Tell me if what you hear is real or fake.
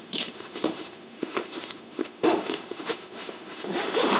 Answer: fake